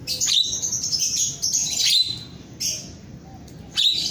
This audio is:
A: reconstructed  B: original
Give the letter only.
B